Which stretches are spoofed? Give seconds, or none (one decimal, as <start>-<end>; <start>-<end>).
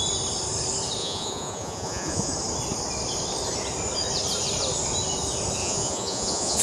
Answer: 1.0-2.3; 5.6-6.6